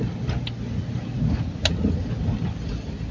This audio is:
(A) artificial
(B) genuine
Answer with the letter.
B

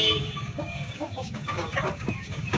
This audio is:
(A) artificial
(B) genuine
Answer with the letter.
A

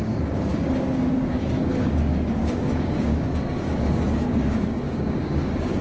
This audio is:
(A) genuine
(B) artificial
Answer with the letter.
B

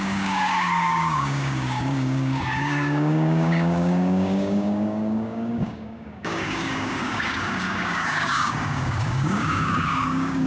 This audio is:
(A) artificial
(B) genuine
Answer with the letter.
A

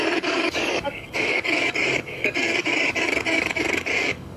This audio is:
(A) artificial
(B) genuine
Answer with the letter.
A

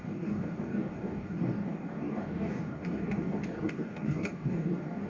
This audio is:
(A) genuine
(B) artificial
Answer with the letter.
B